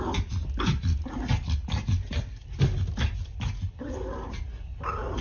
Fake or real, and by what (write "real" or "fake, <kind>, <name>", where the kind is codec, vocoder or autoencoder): real